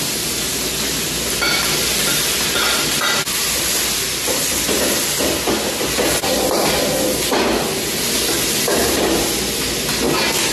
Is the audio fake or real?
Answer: real